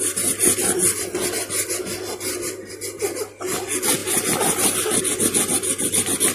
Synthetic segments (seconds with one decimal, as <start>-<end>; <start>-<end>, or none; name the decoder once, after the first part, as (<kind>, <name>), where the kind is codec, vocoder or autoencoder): none